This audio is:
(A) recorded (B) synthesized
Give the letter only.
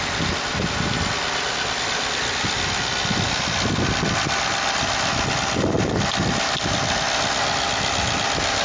A